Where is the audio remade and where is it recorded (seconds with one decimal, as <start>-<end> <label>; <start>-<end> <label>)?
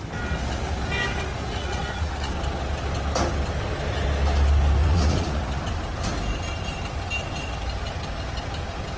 0.0-1.3 recorded; 1.3-2.3 remade; 2.3-4.8 recorded; 4.8-5.6 remade; 5.6-9.0 recorded